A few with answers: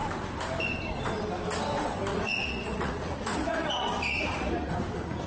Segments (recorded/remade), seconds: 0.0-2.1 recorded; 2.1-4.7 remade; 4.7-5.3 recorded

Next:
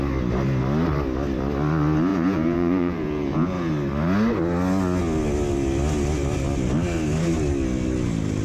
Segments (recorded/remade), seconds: 0.0-2.1 recorded; 2.1-3.7 remade; 3.7-8.4 recorded

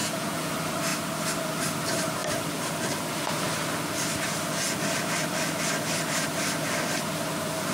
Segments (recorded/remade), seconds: 0.0-0.5 remade; 0.5-7.7 recorded

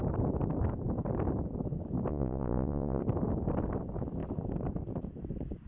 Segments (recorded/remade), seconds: 0.0-2.1 recorded; 2.1-3.0 remade; 3.0-5.7 recorded

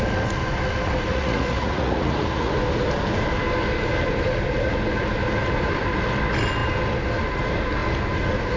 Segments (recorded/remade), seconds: 0.0-1.1 recorded; 1.1-2.5 remade; 2.5-8.6 recorded

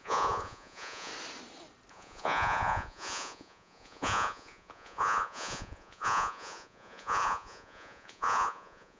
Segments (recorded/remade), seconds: 0.0-1.1 remade; 1.1-1.9 recorded; 1.9-9.0 remade

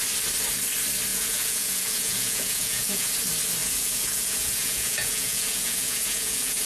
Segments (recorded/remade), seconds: 0.0-1.1 recorded; 1.1-3.1 remade; 3.1-3.6 recorded; 3.6-6.7 remade